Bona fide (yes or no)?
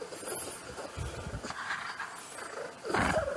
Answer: yes